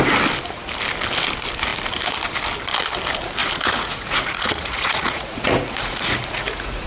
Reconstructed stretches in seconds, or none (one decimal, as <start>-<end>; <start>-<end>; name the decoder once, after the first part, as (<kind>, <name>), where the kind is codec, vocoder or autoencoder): 3.4-6.9 (vocoder, Vocos)